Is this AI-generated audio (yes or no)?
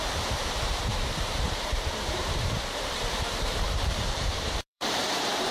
yes